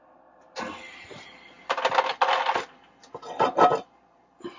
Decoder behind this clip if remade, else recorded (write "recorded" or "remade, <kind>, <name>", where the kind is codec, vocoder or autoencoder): recorded